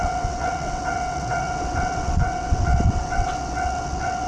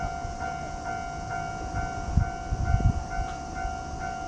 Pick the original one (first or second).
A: second